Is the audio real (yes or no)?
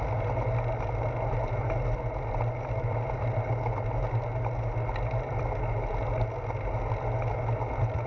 yes